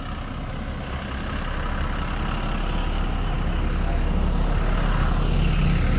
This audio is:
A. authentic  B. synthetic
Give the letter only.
A